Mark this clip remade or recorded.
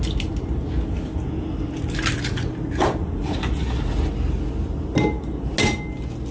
recorded